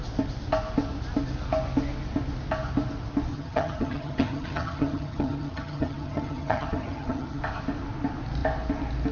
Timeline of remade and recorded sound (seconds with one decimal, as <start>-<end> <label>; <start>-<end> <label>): 0.0-3.3 recorded; 3.3-7.4 remade; 7.4-9.1 recorded